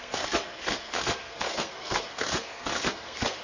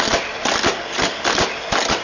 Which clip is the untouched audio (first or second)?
second